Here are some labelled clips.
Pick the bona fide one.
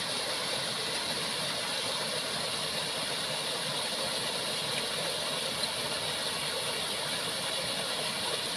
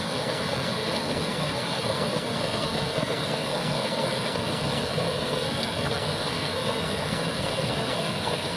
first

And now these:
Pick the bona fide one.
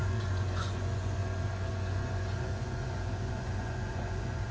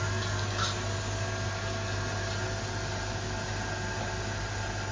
second